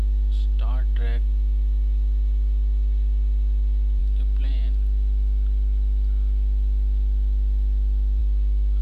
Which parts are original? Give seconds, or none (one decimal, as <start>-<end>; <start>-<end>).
0.0-8.8